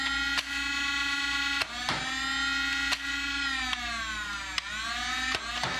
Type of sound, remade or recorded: recorded